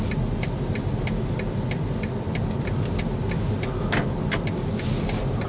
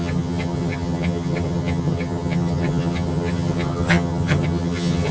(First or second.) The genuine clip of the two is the first